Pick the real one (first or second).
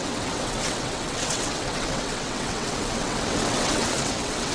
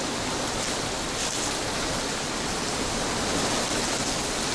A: second